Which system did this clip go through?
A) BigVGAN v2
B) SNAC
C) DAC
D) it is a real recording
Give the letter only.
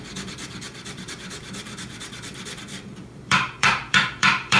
A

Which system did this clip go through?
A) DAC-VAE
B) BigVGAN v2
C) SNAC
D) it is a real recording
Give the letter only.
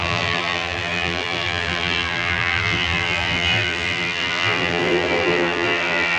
B